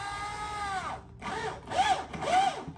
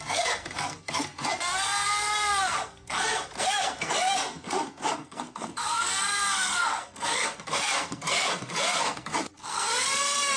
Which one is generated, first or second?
second